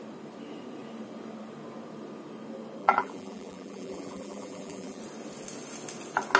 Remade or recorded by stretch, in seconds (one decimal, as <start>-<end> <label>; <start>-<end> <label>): 0.0-2.8 recorded; 2.8-5.0 remade; 5.0-6.4 recorded